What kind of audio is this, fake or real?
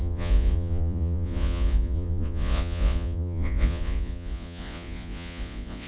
fake